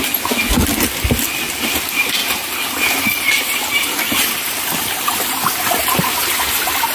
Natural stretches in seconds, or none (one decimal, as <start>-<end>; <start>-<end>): 0.0-6.9